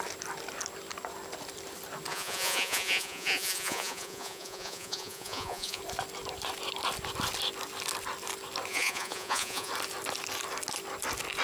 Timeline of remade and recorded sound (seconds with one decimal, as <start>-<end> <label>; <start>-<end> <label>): 0.0-2.1 recorded; 2.1-5.8 remade; 5.8-8.7 recorded; 8.7-9.7 remade; 9.7-11.4 recorded